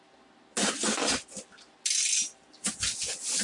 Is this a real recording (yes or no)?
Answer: yes